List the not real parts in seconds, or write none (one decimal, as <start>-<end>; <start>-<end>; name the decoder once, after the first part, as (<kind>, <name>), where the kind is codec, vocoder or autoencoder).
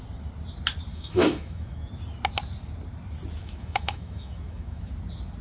0.9-1.9 (autoencoder, DAC-VAE); 3.4-4.9